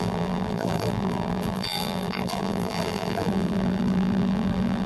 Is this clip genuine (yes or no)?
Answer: no